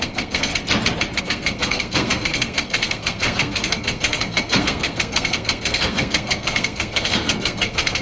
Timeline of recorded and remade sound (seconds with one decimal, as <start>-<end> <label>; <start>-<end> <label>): 0.0-0.5 remade; 0.5-1.2 recorded; 1.2-8.0 remade